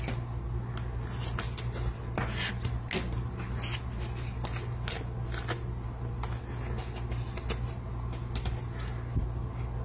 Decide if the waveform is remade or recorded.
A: recorded